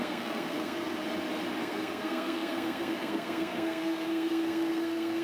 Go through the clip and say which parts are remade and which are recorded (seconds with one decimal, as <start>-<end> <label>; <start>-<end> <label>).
0.0-1.0 remade; 1.0-1.6 recorded; 1.6-5.2 remade